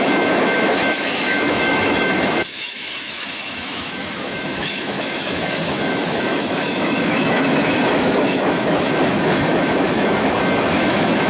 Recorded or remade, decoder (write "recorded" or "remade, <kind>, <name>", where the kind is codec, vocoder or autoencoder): remade, autoencoder, DAC-VAE